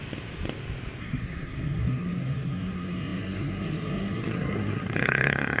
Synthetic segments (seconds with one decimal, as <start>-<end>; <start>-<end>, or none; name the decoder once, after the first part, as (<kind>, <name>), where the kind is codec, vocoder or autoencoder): 1.0-5.6 (codec, SNAC)